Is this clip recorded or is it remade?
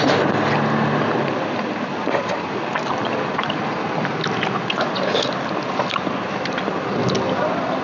recorded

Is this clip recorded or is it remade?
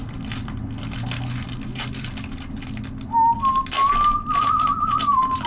recorded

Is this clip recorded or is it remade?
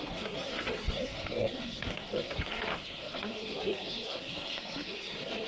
remade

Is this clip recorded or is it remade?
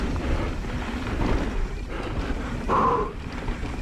recorded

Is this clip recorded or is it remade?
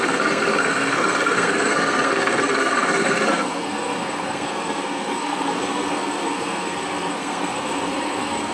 remade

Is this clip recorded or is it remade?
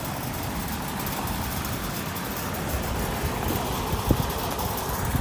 recorded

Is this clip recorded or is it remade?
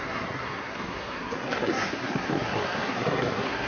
remade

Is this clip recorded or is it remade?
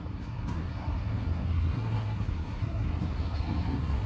remade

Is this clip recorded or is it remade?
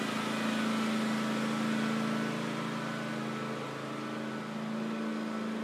recorded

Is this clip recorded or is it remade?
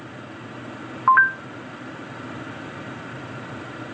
recorded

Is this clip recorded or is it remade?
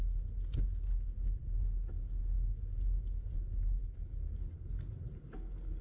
recorded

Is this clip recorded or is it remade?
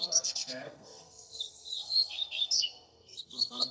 remade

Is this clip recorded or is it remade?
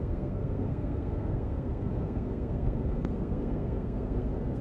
remade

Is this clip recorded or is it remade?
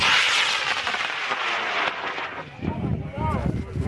recorded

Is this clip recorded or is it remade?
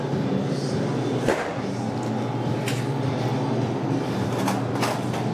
recorded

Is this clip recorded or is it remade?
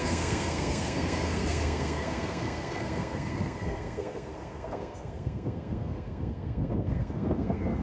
remade